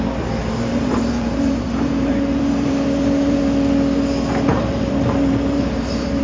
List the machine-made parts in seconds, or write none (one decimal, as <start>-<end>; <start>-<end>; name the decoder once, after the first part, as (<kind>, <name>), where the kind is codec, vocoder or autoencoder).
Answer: 0.4-3.4 (vocoder, BigVGAN v2); 4.5-6.2